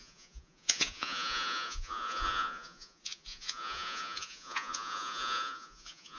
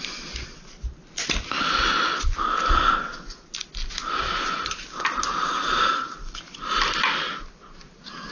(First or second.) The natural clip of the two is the second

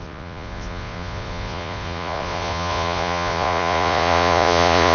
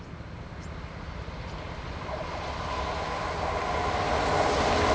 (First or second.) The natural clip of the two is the second